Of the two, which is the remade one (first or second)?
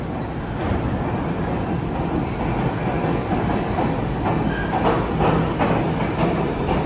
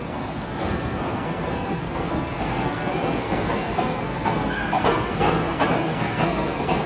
second